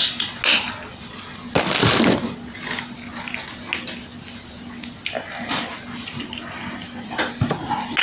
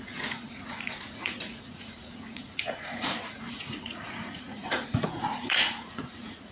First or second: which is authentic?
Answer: first